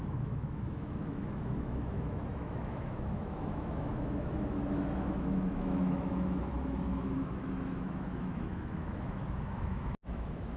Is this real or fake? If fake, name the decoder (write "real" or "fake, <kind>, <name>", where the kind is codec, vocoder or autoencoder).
fake, autoencoder, DAC-VAE